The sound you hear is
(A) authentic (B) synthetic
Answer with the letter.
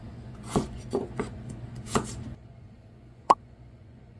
B